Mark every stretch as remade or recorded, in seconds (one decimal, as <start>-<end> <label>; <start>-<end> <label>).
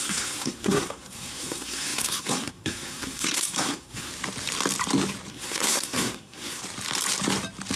0.0-4.1 remade; 4.1-5.3 recorded; 5.3-6.6 remade; 6.6-7.8 recorded